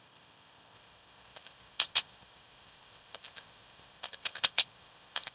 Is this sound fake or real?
fake